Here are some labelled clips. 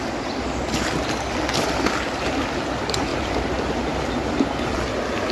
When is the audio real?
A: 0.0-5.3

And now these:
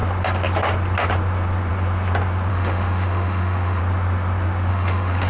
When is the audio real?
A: 0.0-2.5; 3.8-4.7

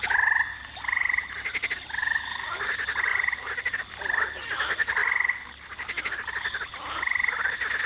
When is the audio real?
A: 0.0-2.0; 2.6-7.9

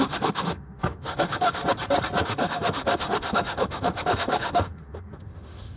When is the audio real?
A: 1.6-2.2

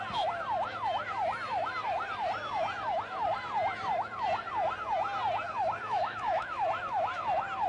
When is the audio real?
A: 0.0-5.8; 6.6-7.7

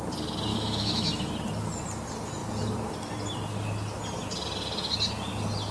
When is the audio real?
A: 0.0-0.5; 1.3-5.7